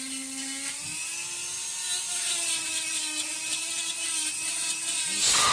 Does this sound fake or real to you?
real